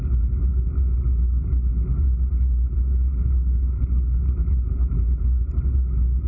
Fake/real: real